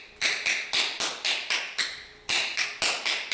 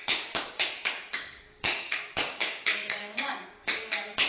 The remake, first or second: second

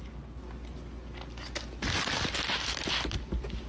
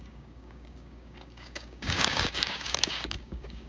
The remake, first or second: second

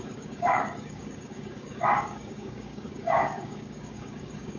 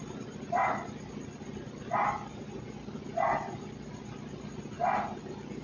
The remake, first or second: first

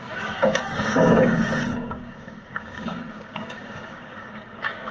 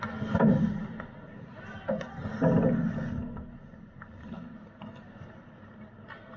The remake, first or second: first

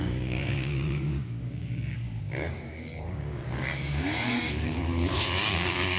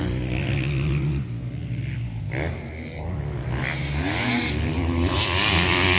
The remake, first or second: first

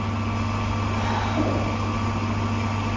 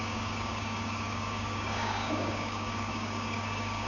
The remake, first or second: second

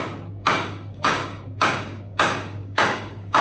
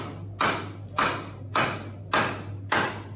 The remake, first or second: first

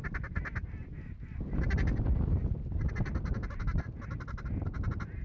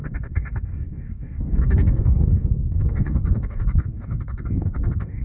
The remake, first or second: second